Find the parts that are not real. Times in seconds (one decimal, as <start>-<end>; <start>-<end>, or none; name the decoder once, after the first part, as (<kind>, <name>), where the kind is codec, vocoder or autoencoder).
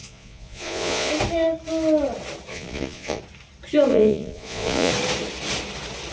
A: 0.0-1.1 (vocoder, Vocos); 2.5-3.2; 3.9-4.9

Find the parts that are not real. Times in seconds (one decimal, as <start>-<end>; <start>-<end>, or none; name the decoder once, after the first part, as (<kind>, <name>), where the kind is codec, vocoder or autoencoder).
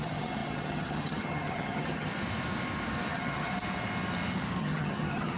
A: 0.0-2.1 (vocoder, HiFi-GAN); 3.1-3.5; 4.6-5.4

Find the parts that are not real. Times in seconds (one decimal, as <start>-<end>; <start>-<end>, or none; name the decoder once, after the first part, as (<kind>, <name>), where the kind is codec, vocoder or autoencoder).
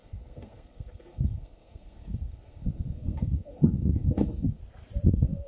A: 0.0-4.6 (codec, SNAC); 5.1-5.5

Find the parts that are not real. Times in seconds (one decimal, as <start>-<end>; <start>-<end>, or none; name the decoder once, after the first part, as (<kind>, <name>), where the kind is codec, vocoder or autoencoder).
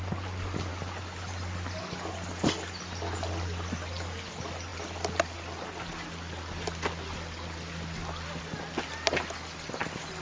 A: none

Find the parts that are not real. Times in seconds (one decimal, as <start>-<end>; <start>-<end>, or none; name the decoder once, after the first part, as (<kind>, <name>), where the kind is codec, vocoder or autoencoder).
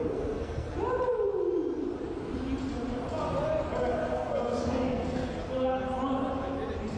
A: 0.0-0.7 (codec, SNAC); 4.1-5.3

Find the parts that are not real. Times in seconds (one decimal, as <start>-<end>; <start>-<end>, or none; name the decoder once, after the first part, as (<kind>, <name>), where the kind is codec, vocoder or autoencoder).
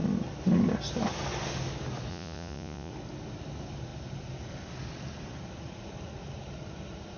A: 2.1-2.9 (vocoder, Vocos)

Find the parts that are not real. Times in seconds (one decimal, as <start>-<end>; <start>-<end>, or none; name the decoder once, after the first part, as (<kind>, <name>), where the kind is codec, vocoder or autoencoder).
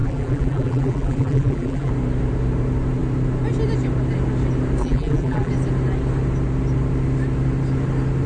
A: 0.0-1.9 (vocoder, BigVGAN v2); 4.8-5.5